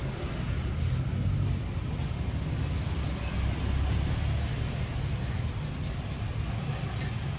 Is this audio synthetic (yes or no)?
no